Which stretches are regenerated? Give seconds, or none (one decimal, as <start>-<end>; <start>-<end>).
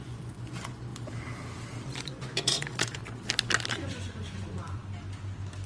0.0-0.9; 2.0-3.0; 3.7-4.8